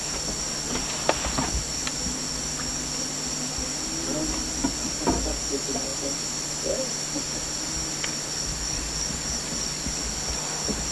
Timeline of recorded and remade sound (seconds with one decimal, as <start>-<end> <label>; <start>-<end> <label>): 0.0-10.9 recorded